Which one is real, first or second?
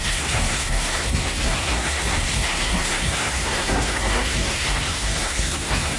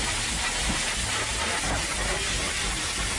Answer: second